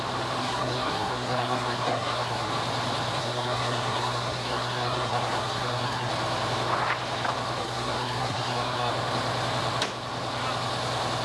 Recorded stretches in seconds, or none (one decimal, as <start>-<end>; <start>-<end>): 0.0-0.4; 2.5-3.2; 6.1-7.6; 8.9-11.2